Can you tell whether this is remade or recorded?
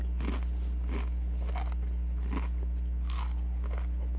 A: recorded